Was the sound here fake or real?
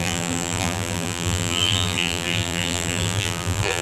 fake